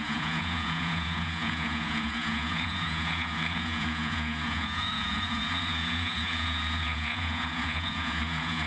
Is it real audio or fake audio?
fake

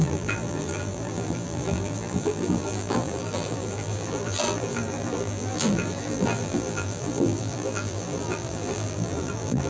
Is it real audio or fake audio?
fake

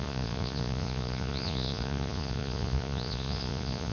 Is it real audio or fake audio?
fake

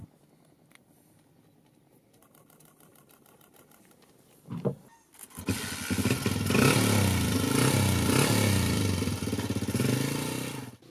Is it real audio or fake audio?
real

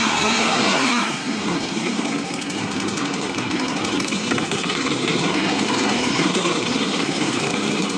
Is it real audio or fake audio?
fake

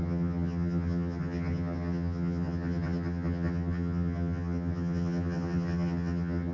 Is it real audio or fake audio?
fake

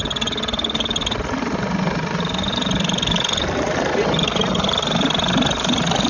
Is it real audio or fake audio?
real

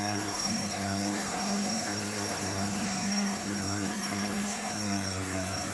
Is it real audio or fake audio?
fake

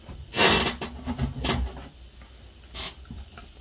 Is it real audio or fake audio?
real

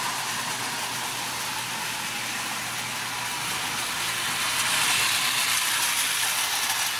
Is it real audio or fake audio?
real